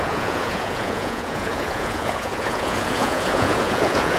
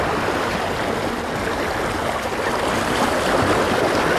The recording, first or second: second